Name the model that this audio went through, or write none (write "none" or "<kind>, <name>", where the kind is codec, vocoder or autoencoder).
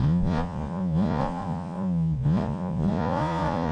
vocoder, Vocos